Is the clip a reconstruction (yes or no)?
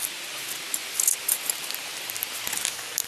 no